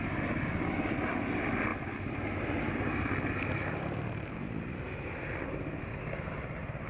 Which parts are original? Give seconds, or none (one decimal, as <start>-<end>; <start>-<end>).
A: 0.0-6.9